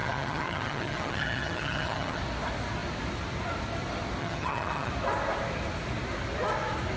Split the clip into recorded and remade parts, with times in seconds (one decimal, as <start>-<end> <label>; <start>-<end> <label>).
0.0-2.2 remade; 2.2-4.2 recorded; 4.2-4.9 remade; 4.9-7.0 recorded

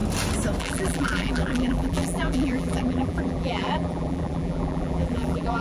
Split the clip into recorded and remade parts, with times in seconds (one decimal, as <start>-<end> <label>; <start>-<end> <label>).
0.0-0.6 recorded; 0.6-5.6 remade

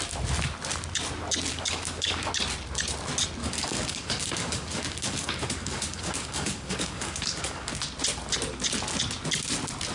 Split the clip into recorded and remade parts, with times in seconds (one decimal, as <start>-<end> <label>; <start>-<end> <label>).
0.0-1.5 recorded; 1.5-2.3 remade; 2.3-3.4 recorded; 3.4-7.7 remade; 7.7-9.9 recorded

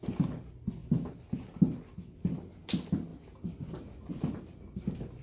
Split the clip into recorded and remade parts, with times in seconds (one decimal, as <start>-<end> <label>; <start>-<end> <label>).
0.0-5.2 recorded

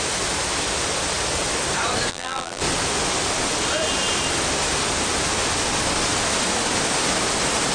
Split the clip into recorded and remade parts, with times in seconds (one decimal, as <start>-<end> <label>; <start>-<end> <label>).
0.0-2.1 recorded; 2.1-2.6 remade; 2.6-7.7 recorded